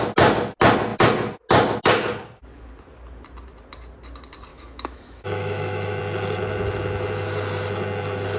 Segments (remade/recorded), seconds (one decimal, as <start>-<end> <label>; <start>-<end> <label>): 0.0-4.5 recorded; 4.5-6.0 remade; 6.0-8.4 recorded